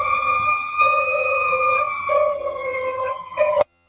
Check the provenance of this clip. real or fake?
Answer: fake